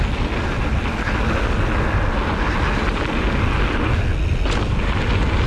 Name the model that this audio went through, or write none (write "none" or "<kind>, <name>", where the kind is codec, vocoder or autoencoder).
none